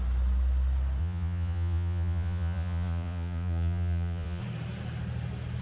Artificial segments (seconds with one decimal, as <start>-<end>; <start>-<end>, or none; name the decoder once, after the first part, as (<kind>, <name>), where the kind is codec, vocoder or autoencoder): 1.0-4.4 (vocoder, Vocos)